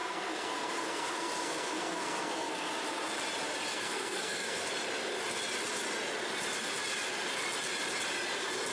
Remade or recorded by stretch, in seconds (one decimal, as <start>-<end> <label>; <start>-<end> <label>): 0.0-2.7 remade; 2.7-3.7 recorded; 3.7-4.7 remade; 4.7-8.7 recorded